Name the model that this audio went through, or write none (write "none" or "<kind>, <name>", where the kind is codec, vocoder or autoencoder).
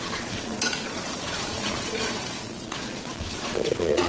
vocoder, Vocos